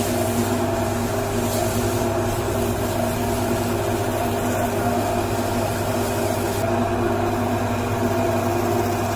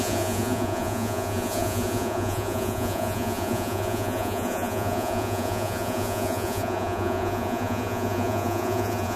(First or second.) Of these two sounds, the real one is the first